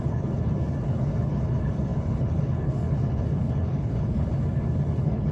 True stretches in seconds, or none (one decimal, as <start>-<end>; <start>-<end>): none